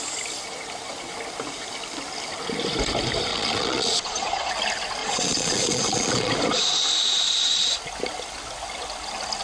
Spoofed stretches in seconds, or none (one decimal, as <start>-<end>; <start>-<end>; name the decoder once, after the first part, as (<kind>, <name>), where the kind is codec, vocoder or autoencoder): 3.3-4.5 (vocoder, Vocos); 5.0-6.3